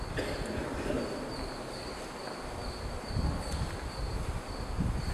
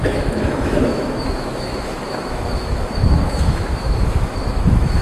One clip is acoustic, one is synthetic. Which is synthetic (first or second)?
second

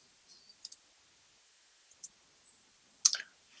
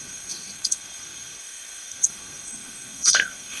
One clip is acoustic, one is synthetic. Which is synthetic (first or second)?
second